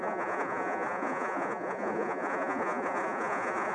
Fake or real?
fake